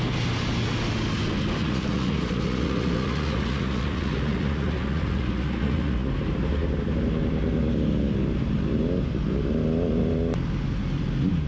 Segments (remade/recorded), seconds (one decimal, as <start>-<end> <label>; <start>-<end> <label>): 0.0-1.6 recorded; 1.6-6.1 remade; 6.1-11.5 recorded